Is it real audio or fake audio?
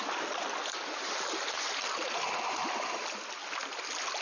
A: real